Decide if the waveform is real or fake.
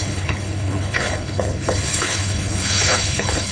fake